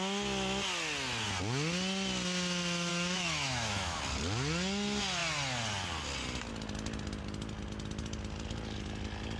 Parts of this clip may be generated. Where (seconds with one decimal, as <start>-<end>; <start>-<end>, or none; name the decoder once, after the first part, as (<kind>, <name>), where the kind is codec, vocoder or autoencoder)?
2.9-4.0 (autoencoder, DAC-VAE)